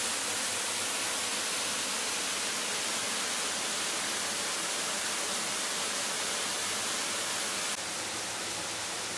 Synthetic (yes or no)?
no